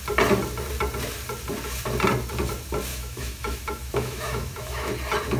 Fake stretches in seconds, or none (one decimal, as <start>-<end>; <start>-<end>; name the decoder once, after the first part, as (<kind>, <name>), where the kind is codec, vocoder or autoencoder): 2.9-4.9 (autoencoder, DAC-VAE)